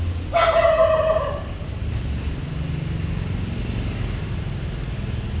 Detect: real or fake real